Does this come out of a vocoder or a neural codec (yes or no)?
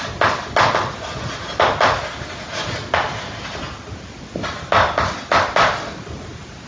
no